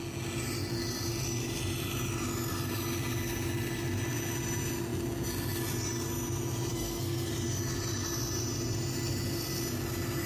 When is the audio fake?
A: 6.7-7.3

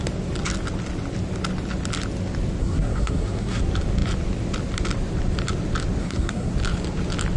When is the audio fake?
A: 2.6-3.6; 6.0-6.5